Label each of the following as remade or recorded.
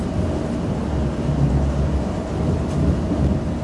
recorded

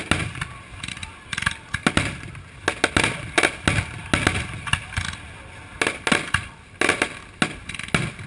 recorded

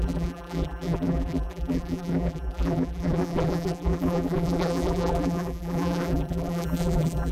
remade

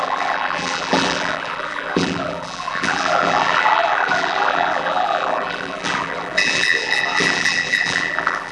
remade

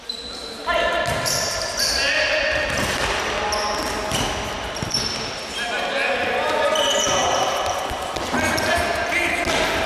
recorded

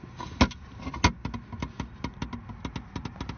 recorded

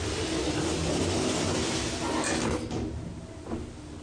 recorded